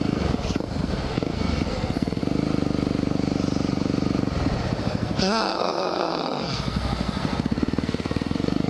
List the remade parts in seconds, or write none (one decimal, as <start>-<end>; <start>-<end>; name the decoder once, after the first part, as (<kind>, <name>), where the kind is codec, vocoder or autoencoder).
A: 0.0-2.2 (codec, SNAC); 4.8-8.7